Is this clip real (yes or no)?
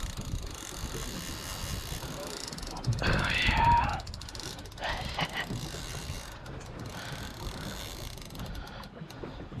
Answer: yes